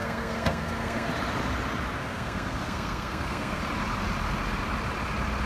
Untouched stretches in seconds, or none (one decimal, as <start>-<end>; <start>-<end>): 1.1-2.0; 3.6-5.5